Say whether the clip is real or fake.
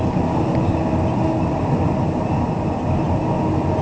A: real